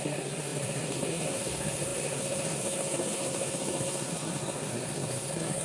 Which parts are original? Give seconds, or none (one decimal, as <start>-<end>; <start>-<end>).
none